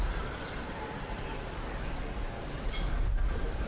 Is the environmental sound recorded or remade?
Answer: remade